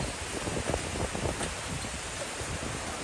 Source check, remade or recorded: recorded